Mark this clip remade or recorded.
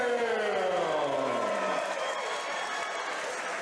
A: recorded